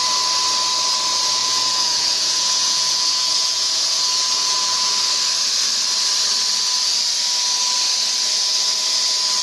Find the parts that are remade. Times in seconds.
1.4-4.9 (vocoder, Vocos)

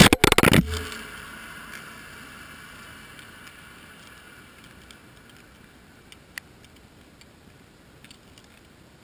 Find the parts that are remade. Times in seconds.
none

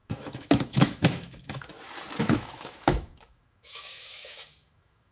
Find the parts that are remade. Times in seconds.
0.0-1.7 (autoencoder, DAC-VAE); 2.2-5.1

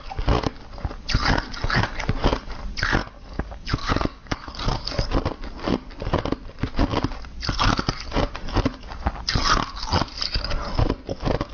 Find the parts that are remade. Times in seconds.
3.0-4.5 (codec, DAC)

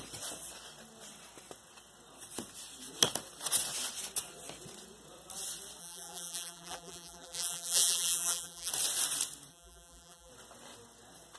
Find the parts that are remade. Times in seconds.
5.8-8.7 (vocoder, BigVGAN v2); 9.5-10.3

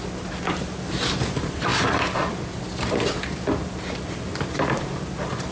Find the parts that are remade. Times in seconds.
none

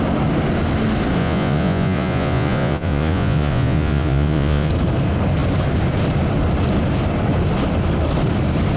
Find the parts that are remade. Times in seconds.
1.2-4.7 (vocoder, Vocos)